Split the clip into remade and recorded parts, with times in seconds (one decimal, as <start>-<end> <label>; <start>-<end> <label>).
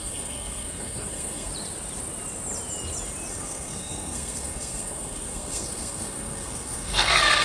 0.0-1.5 remade; 1.5-3.3 recorded; 3.3-7.4 remade